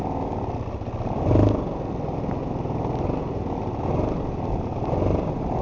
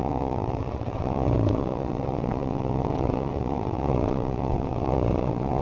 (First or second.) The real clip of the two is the first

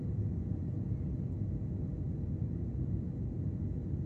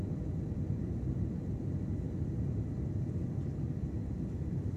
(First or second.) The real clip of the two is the first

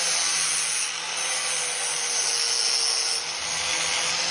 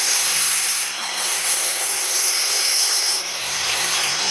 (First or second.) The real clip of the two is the first